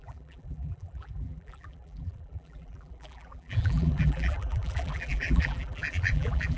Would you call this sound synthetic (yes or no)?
yes